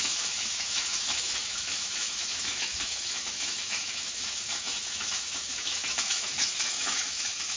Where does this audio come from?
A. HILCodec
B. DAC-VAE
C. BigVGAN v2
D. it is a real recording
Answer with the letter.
B